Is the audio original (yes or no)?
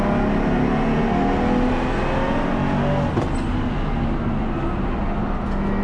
yes